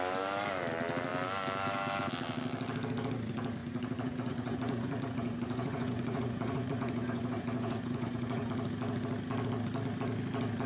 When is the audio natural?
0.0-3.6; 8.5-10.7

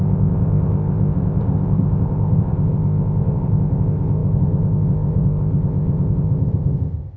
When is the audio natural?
none